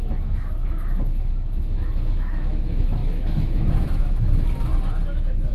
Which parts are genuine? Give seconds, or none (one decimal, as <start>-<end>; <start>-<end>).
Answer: 4.7-5.5